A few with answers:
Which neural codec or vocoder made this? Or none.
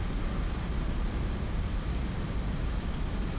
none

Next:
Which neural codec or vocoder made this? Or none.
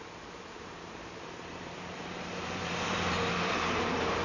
vocoder, BigVGAN v2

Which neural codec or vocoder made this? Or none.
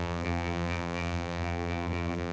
vocoder, BigVGAN v2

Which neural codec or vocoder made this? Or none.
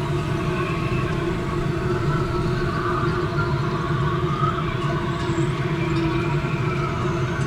none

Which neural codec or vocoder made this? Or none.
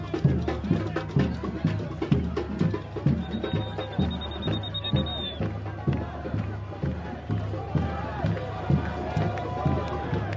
none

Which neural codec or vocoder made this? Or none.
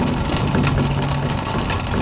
none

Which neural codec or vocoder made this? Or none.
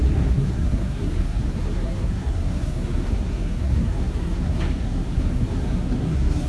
codec, SNAC